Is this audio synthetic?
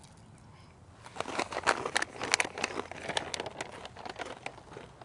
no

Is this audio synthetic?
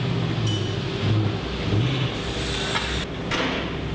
no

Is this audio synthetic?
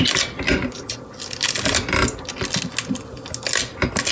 no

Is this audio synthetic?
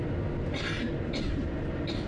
no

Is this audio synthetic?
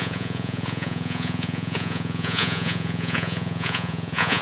yes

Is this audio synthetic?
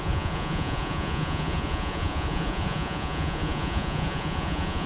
yes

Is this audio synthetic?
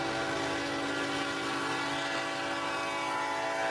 no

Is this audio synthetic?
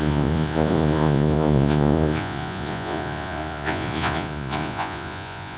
yes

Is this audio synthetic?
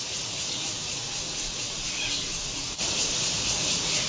yes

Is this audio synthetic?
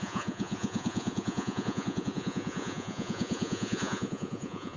yes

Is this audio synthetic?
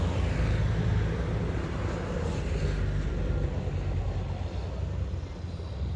no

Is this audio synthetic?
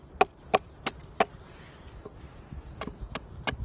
no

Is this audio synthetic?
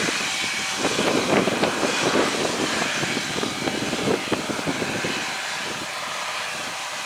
no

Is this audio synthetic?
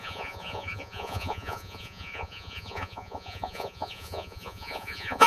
yes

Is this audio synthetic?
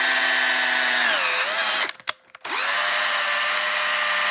no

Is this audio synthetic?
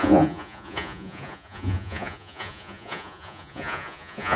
yes